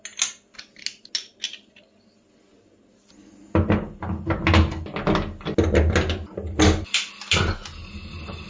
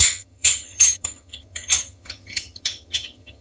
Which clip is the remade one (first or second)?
second